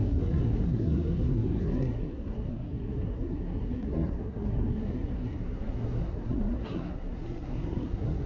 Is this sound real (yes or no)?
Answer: no